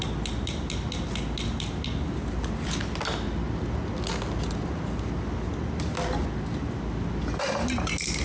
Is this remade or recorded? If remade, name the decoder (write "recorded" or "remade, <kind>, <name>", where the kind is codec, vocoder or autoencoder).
recorded